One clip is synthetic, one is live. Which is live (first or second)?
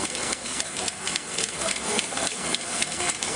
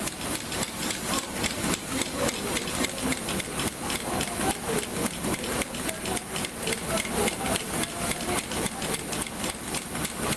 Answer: second